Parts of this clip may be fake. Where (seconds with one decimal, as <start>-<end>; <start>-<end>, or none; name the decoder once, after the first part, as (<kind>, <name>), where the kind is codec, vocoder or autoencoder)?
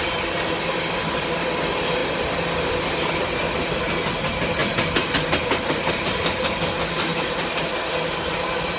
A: 4.6-6.6 (vocoder, BigVGAN v2)